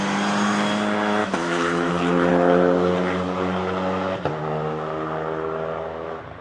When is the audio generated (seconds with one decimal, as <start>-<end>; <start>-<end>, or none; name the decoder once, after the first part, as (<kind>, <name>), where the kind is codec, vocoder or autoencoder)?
1.2-1.9 (autoencoder, DAC-VAE)